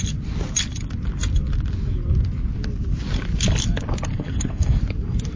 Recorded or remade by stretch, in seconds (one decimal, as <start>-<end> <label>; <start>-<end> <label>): 0.0-4.1 recorded; 4.1-4.8 remade; 4.8-5.4 recorded